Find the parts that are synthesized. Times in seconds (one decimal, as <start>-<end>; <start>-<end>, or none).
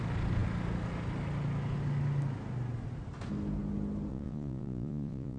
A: 4.1-5.4